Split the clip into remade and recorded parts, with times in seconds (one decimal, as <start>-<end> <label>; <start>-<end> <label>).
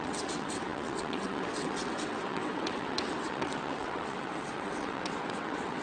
0.0-5.8 remade